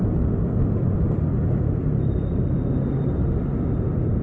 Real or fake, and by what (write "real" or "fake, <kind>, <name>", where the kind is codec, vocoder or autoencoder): real